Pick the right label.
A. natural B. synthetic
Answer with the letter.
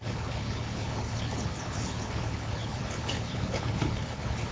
B